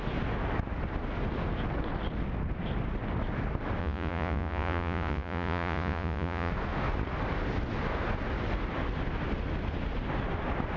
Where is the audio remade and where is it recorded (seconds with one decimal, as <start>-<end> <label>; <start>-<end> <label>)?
0.0-3.8 recorded; 3.8-6.5 remade; 6.5-10.8 recorded